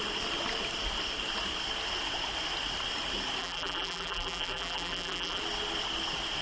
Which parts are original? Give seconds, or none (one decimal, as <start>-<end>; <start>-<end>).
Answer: 0.0-3.4; 5.4-6.4